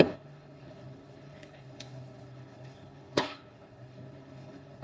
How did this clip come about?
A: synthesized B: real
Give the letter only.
A